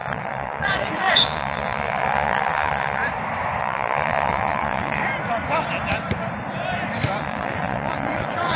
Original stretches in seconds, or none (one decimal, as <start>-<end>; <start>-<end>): 3.0-3.6; 5.0-7.2